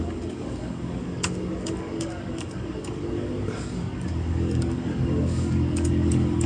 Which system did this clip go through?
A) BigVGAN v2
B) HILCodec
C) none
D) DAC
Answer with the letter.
D